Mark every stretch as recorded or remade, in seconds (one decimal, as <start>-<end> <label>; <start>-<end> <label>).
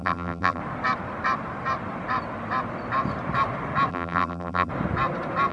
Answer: 0.0-0.6 remade; 0.6-3.9 recorded; 3.9-4.7 remade; 4.7-5.5 recorded